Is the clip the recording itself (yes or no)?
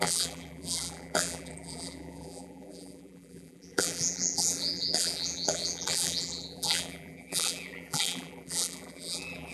no